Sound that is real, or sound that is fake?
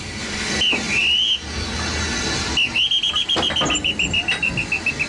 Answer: real